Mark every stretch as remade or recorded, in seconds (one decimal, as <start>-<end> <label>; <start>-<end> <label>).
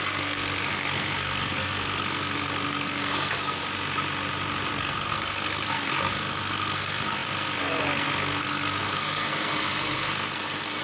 0.0-3.6 remade; 3.6-4.7 recorded; 4.7-10.8 remade